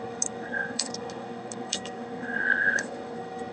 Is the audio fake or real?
fake